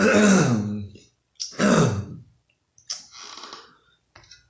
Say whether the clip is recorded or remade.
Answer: recorded